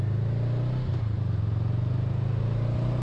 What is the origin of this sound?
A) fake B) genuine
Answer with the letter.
B